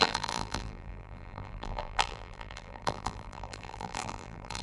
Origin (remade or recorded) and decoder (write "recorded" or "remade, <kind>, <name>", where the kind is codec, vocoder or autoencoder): remade, vocoder, BigVGAN v2